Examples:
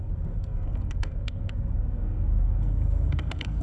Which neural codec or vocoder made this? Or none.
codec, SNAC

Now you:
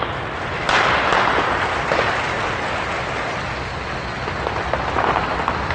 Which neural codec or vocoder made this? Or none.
none